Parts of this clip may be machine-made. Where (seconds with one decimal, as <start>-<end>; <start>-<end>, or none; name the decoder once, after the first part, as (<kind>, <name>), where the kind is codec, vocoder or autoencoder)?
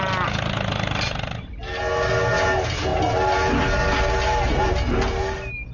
none